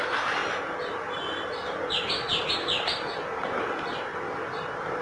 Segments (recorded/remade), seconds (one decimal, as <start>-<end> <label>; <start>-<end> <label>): 0.0-5.0 recorded